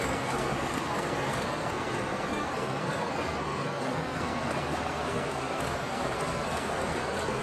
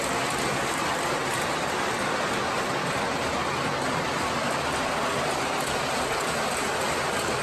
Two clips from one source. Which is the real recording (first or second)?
second